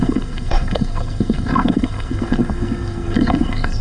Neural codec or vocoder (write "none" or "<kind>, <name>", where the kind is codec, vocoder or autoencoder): codec, SNAC